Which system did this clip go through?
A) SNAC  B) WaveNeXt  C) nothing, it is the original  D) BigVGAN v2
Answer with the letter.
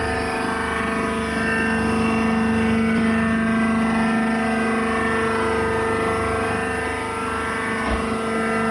C